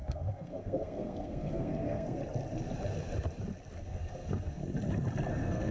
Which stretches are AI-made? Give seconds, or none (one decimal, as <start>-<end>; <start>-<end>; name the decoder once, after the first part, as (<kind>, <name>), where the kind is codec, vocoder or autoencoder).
0.0-2.2 (codec, SNAC); 3.8-4.6; 5.3-5.7